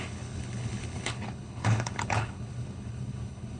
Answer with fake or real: fake